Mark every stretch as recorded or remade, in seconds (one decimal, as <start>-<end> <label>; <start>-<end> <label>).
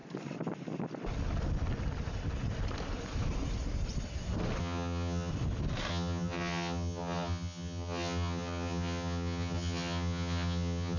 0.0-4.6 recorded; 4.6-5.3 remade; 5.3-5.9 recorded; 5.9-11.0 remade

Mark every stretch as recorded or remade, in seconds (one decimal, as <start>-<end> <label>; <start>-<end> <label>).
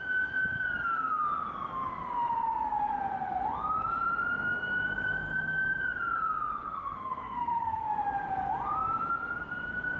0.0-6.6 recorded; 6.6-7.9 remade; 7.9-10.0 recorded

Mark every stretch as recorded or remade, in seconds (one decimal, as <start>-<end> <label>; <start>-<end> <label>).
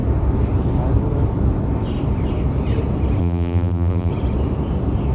0.0-3.2 recorded; 3.2-4.1 remade; 4.1-5.1 recorded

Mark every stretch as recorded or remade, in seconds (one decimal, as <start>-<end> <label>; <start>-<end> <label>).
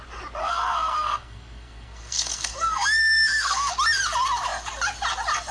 0.0-0.4 recorded; 0.4-3.7 remade; 3.7-5.5 recorded